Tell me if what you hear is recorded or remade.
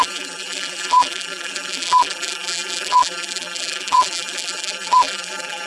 remade